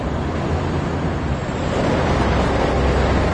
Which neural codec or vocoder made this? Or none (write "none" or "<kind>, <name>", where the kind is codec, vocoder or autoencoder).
none